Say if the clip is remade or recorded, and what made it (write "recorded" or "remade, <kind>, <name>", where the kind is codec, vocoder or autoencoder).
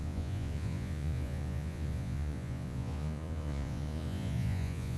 remade, vocoder, Vocos